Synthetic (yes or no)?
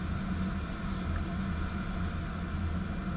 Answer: no